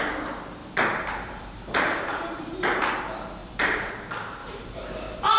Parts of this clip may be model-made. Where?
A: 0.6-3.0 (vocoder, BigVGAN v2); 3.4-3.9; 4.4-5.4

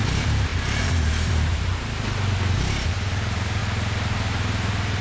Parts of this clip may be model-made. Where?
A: 0.0-1.7 (vocoder, BigVGAN v2); 2.6-3.6

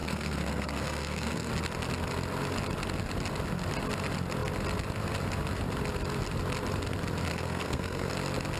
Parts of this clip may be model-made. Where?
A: 0.0-1.5 (codec, SNAC); 7.3-8.1